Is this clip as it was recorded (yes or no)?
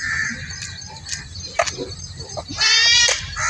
yes